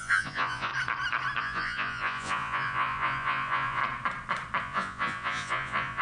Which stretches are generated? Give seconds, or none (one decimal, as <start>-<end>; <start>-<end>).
0.0-0.7; 1.4-3.8; 4.6-6.0